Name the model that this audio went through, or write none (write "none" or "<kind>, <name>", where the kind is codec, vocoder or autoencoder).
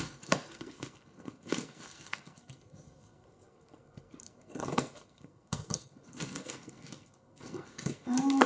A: codec, SNAC